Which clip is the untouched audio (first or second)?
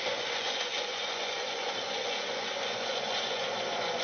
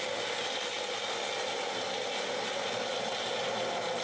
second